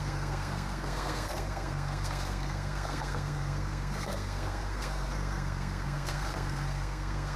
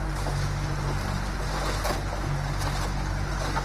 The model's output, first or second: first